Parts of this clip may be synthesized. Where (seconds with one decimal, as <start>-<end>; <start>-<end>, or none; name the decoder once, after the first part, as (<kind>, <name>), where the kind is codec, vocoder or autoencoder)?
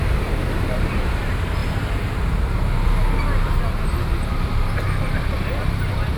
0.0-1.2 (vocoder, BigVGAN v2)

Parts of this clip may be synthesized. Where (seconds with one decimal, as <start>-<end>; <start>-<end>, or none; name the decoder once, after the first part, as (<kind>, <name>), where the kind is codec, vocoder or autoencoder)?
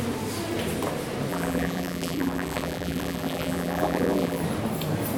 1.3-4.4 (vocoder, BigVGAN v2)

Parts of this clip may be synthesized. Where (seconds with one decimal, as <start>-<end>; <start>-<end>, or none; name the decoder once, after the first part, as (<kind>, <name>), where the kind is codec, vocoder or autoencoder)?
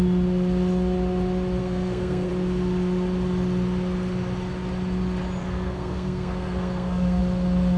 1.6-2.3 (codec, SNAC); 5.4-7.2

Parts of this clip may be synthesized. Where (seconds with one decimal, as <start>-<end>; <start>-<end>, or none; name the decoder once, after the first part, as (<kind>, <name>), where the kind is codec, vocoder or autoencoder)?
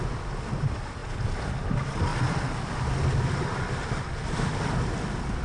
0.0-1.0 (vocoder, BigVGAN v2); 1.7-2.1; 3.7-5.4